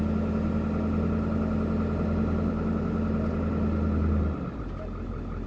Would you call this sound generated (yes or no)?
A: no